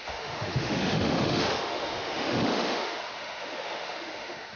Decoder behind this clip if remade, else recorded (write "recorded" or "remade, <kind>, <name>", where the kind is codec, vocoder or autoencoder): remade, autoencoder, DAC-VAE